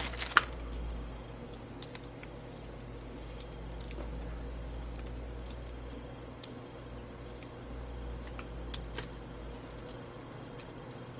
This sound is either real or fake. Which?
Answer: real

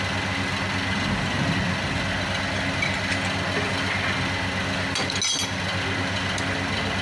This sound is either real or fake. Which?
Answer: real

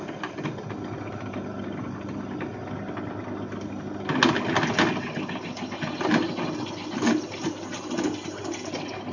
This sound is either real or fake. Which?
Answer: real